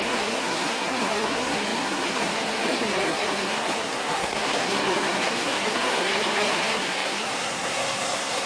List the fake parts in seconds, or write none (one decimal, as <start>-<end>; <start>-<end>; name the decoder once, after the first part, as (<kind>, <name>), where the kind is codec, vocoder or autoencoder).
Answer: 0.0-8.5 (codec, SNAC)